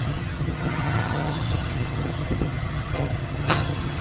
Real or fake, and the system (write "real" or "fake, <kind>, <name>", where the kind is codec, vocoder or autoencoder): fake, vocoder, HiFi-GAN